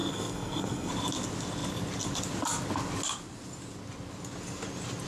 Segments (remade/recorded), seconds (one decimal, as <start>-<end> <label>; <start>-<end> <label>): 0.0-0.9 remade; 0.9-5.1 recorded